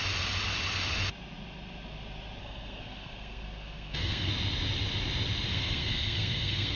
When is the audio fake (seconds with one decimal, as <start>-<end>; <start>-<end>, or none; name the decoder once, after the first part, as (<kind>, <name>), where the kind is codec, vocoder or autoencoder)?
2.4-4.3 (codec, SNAC); 5.5-6.8